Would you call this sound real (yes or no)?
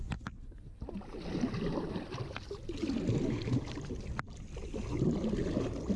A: yes